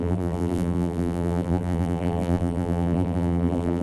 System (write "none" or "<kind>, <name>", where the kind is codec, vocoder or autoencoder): vocoder, BigVGAN v2